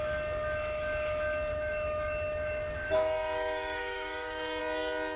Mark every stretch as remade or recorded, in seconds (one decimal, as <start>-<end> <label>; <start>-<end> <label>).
0.0-1.5 recorded; 1.5-4.6 remade; 4.6-5.2 recorded